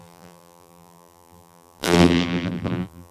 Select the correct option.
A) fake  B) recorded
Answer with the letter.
A